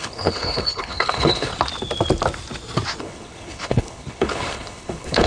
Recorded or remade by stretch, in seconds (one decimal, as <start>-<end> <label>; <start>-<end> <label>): 0.0-1.5 remade; 1.5-3.0 recorded; 3.0-5.3 remade